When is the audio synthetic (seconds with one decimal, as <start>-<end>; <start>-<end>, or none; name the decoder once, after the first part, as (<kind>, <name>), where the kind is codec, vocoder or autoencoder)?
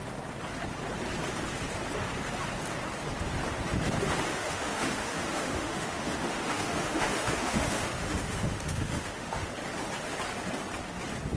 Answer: 4.3-9.5 (autoencoder, DAC-VAE)